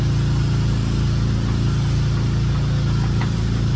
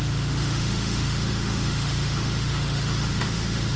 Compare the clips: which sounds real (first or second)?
first